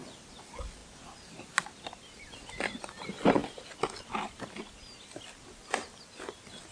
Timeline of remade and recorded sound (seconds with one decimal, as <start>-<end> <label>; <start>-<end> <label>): 0.0-6.7 recorded